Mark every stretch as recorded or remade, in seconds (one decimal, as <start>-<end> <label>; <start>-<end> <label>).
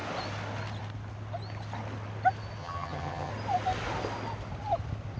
0.0-2.6 recorded; 2.6-3.3 remade; 3.3-5.2 recorded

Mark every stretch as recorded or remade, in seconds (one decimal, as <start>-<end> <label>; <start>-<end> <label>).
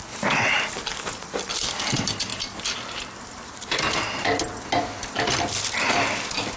0.0-6.6 recorded